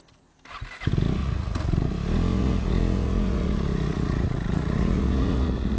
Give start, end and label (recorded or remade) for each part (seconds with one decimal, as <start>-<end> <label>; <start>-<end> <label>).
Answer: 0.0-1.2 recorded; 1.2-1.8 remade; 1.8-2.3 recorded; 2.3-5.8 remade